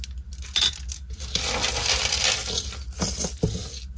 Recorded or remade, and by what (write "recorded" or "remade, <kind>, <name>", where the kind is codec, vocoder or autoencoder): recorded